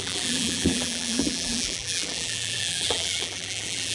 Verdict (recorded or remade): remade